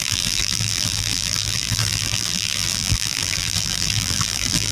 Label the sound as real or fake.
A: fake